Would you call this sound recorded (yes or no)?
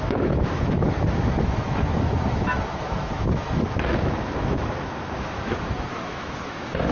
no